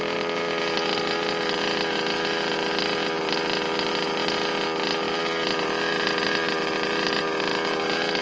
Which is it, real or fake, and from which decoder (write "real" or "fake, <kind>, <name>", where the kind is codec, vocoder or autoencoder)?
real